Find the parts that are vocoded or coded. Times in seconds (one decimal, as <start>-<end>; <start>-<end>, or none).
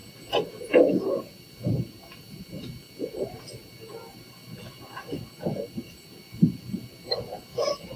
none